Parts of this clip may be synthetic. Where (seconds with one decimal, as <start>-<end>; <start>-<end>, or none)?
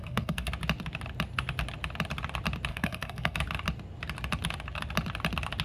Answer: 0.0-0.5; 2.7-3.4